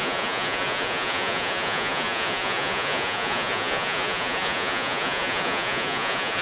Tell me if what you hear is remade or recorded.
remade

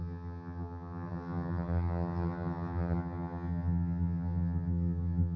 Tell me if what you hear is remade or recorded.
remade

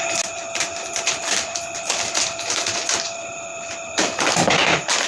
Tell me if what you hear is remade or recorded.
recorded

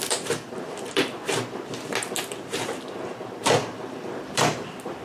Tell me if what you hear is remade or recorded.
recorded